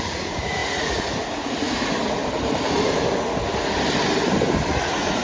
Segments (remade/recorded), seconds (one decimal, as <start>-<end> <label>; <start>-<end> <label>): 0.0-2.2 remade; 2.2-4.7 recorded; 4.7-5.2 remade

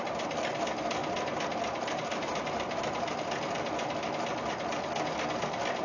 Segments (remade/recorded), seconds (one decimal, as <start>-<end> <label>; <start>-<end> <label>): 0.0-5.8 recorded